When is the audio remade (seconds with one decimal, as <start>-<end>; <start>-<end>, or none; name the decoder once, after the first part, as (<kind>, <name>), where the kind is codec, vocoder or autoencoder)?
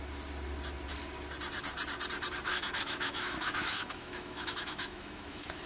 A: 2.5-5.7 (autoencoder, DAC-VAE)